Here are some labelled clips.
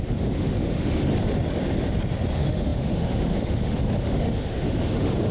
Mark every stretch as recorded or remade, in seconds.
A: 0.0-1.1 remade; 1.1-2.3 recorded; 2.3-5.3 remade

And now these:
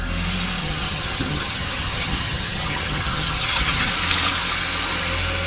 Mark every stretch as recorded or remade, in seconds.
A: 0.0-0.6 recorded; 0.6-3.9 remade; 3.9-5.5 recorded

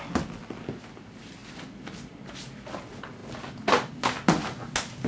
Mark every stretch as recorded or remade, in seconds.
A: 0.0-5.1 recorded

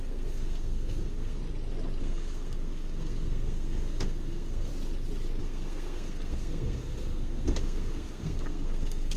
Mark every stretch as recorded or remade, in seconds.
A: 0.0-1.4 remade; 1.4-2.0 recorded; 2.0-4.7 remade; 4.7-5.4 recorded; 5.4-9.2 remade

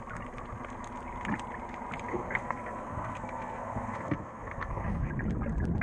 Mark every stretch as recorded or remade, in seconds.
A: 0.0-2.1 recorded; 2.1-5.1 remade; 5.1-5.8 recorded

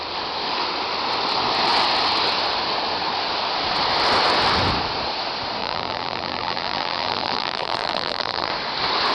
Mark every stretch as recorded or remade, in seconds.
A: 0.0-5.6 recorded; 5.6-8.5 remade; 8.5-9.1 recorded